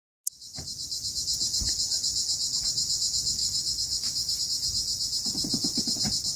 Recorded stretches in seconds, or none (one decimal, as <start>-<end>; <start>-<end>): 0.0-3.4; 4.4-6.4

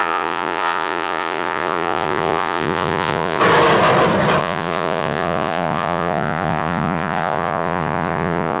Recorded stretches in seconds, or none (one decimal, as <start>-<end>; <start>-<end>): 3.4-4.4

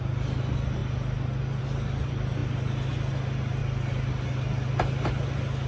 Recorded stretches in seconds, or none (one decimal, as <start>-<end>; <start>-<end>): 0.0-5.7

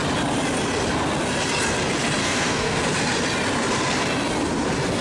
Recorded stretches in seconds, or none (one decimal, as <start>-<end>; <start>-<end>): 0.0-2.2; 2.8-5.0

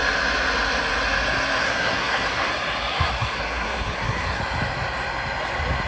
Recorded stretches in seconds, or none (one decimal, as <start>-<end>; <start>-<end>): 0.0-1.6; 2.5-2.9; 4.4-5.9